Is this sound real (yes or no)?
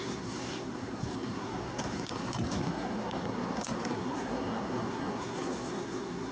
no